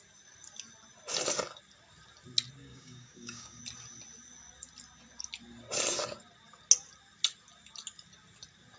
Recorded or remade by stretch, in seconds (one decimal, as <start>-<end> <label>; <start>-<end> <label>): 0.0-2.6 recorded; 2.6-3.6 remade; 3.6-8.8 recorded

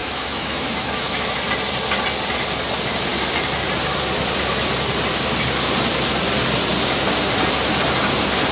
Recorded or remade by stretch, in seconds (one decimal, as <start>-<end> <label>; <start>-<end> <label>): 0.0-1.3 remade; 1.3-8.5 recorded

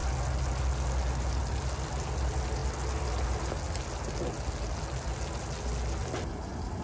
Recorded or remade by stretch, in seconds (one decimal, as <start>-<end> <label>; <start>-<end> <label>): 0.0-6.8 recorded

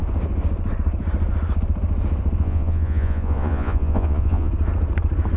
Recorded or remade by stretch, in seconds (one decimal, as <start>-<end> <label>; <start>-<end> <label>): 0.0-2.4 recorded; 2.4-4.5 remade; 4.5-5.4 recorded

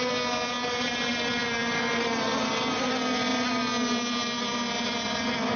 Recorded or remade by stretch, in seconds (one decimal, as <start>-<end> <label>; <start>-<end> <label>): 0.0-5.6 recorded

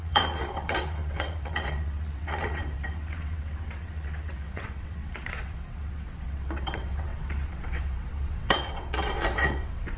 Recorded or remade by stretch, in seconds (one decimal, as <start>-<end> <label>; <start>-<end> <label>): 0.0-10.0 remade